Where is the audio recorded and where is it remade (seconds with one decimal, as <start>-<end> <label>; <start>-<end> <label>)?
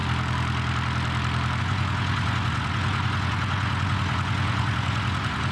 0.0-1.6 recorded; 1.6-5.5 remade